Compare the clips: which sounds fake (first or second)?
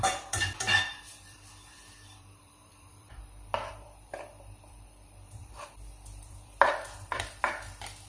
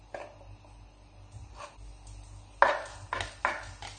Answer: first